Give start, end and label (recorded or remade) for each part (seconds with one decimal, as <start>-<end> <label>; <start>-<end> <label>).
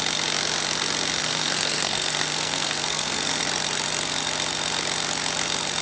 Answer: 0.0-1.2 recorded; 1.2-3.4 remade; 3.4-5.8 recorded